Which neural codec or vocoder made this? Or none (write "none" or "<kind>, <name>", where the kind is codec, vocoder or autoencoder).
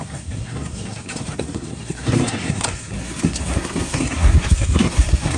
codec, SNAC